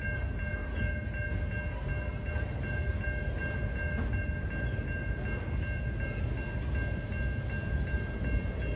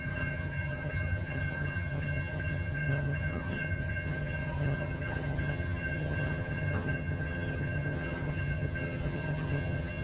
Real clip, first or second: first